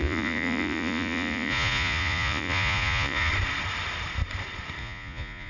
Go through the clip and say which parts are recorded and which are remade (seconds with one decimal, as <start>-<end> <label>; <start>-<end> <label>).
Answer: 0.0-3.3 remade; 3.3-4.8 recorded; 4.8-5.5 remade